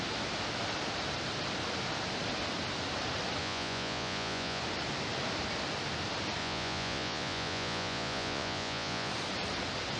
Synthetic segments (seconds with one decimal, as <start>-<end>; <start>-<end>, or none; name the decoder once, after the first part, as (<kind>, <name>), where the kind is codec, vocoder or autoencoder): 3.4-4.6 (vocoder, Vocos); 6.4-9.1